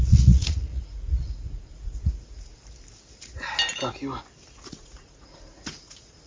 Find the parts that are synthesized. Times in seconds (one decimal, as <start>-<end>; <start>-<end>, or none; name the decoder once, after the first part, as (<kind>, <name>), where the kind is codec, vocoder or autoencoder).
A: 0.0-2.5 (vocoder, Vocos); 4.7-6.3